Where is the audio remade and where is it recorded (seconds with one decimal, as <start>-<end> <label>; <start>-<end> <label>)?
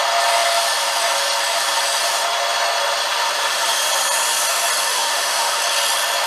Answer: 0.0-4.9 recorded; 4.9-5.6 remade; 5.6-6.3 recorded